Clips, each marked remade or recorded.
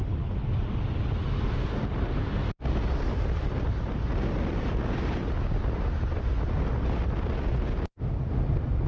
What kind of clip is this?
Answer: recorded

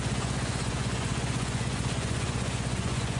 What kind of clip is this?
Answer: remade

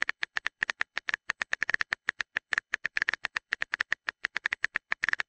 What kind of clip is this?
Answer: remade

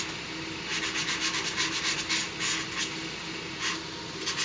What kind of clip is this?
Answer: recorded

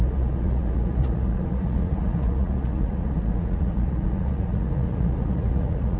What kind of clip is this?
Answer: remade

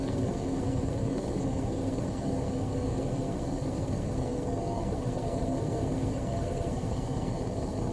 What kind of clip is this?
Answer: remade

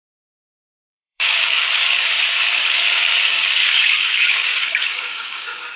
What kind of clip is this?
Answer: remade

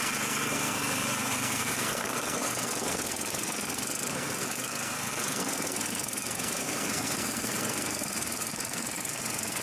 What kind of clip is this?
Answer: remade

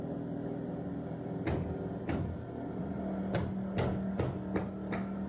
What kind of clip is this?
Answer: recorded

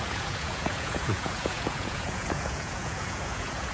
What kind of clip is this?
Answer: remade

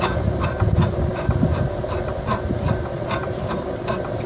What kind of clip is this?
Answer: recorded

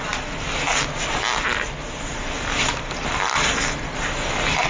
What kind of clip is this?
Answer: recorded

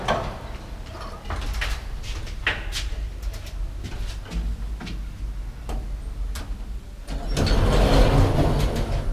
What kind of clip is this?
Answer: recorded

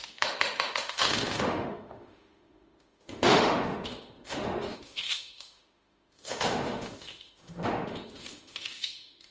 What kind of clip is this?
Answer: remade